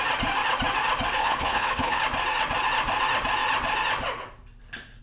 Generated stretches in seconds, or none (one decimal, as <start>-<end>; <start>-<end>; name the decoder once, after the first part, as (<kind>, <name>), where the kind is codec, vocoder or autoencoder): 1.2-2.0 (codec, HILCodec)